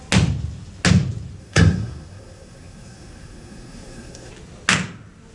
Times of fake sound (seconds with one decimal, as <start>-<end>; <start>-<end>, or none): 1.4-4.3